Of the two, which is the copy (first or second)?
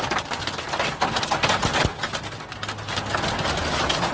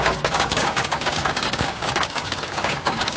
second